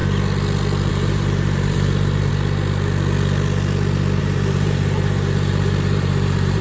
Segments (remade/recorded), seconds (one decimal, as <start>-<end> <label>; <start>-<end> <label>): 0.0-0.9 recorded; 0.9-2.3 remade; 2.3-4.2 recorded; 4.2-6.6 remade